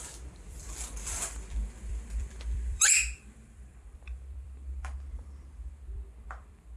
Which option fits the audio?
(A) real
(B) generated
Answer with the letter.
B